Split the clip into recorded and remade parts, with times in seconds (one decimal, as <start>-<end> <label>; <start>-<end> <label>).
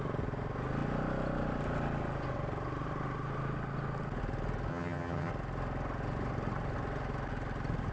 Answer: 0.0-4.7 recorded; 4.7-5.3 remade; 5.3-7.9 recorded